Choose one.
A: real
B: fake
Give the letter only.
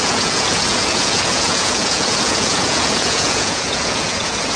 B